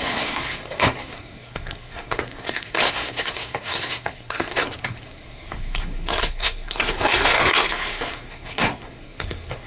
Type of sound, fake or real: fake